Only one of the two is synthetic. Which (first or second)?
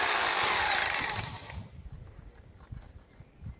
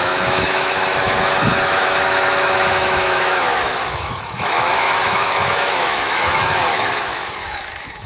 second